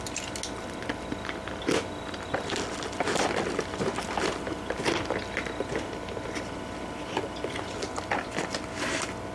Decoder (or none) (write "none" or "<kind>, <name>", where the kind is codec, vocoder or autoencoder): none